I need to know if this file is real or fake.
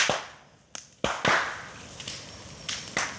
real